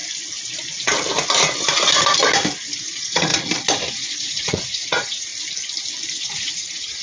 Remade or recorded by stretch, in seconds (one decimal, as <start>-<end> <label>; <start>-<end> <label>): 0.0-2.8 recorded; 2.8-3.3 remade; 3.3-3.9 recorded; 3.9-5.3 remade; 5.3-6.1 recorded; 6.1-7.0 remade